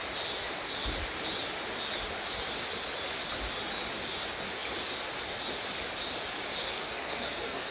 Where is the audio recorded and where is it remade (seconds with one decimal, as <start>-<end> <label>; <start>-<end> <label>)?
0.0-6.6 recorded; 6.6-7.7 remade